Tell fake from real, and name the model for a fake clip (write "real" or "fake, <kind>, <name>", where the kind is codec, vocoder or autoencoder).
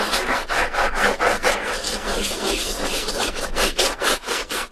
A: fake, codec, SNAC